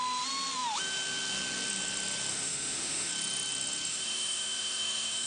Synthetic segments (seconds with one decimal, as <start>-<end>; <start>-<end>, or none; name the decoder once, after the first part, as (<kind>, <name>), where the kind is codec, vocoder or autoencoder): 2.3-3.1 (autoencoder, DAC-VAE); 3.9-5.3